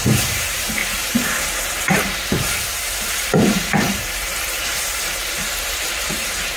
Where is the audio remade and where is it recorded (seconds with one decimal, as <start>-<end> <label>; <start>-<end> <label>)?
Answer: 0.0-6.6 remade